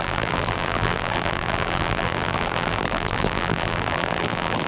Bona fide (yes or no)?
no